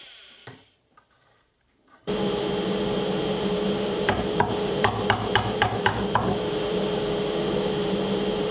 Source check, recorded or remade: remade